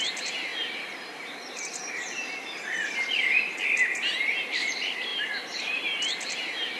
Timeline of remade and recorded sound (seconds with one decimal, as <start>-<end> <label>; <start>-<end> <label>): 0.0-0.5 remade; 0.5-4.6 recorded; 4.6-6.8 remade